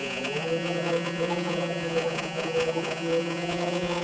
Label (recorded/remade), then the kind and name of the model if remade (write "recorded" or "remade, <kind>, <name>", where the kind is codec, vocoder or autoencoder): remade, vocoder, Vocos